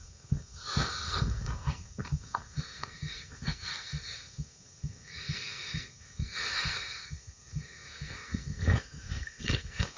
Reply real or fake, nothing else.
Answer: fake